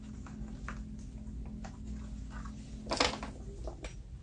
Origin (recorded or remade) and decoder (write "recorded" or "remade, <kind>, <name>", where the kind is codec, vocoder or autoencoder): recorded